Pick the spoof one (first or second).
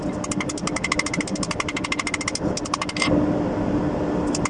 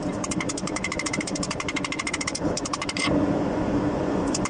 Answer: second